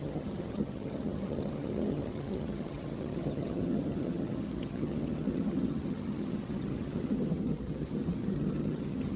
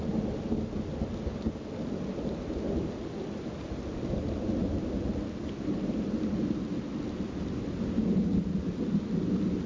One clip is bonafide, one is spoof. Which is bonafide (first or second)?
second